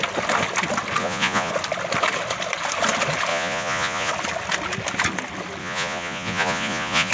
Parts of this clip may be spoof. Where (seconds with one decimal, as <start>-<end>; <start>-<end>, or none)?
1.0-1.5; 3.3-4.1; 5.6-7.1